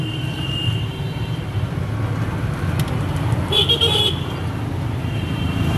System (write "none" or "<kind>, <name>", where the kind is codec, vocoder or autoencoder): none